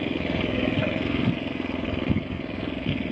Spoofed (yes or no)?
yes